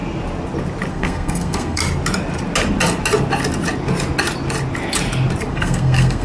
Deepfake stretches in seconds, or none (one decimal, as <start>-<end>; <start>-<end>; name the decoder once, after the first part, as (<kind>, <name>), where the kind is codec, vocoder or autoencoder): 0.9-1.8 (codec, SNAC); 5.5-6.2